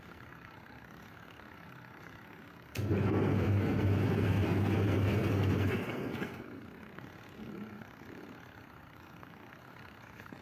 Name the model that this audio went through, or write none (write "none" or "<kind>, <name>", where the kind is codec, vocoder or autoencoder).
codec, SNAC